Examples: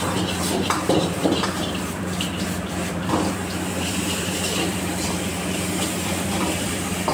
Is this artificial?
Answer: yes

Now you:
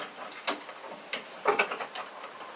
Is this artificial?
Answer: no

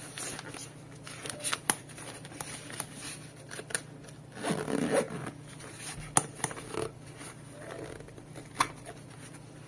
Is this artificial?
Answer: no